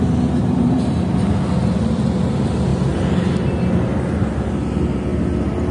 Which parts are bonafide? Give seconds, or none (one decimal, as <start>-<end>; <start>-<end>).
0.0-5.7